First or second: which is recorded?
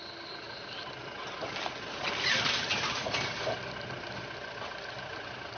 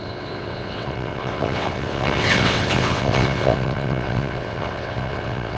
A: first